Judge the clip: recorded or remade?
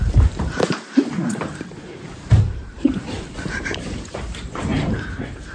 remade